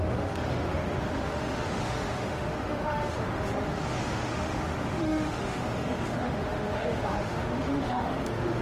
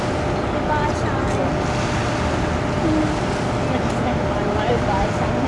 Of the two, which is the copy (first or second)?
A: first